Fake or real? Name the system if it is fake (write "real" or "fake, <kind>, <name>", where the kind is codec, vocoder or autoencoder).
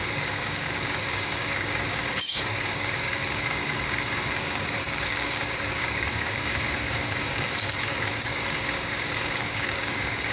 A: fake, codec, DAC